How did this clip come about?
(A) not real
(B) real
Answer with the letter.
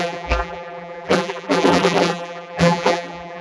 A